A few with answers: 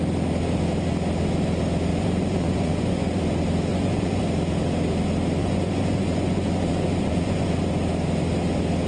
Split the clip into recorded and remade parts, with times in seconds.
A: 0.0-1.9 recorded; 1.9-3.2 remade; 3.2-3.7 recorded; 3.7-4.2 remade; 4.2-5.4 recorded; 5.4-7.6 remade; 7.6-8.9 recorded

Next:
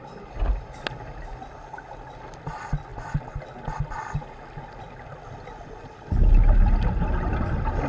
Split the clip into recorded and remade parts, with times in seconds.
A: 0.0-7.9 recorded

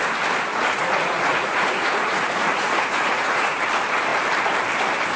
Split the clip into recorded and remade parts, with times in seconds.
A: 0.0-0.5 recorded; 0.5-3.6 remade; 3.6-5.2 recorded

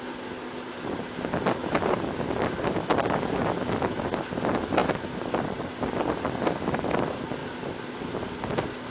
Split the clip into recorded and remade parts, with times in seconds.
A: 0.0-8.9 recorded